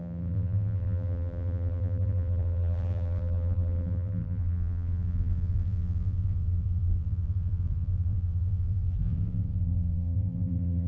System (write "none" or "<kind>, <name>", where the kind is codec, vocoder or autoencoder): vocoder, BigVGAN v2